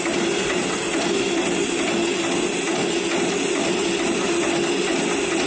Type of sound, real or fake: real